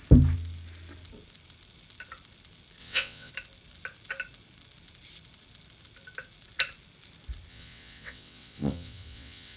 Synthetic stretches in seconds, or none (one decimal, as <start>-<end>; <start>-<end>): 2.8-3.3; 7.5-9.6